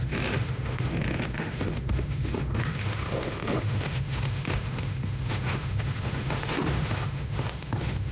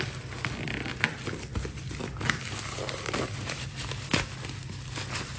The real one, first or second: second